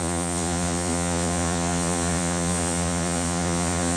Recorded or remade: remade